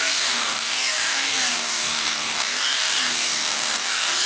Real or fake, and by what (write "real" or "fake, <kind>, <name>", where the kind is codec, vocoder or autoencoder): fake, codec, DAC